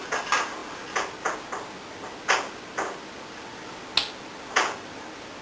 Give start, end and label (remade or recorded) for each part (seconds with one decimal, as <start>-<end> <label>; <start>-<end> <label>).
0.0-5.4 recorded